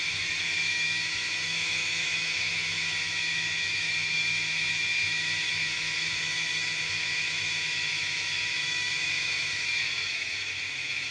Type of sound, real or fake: fake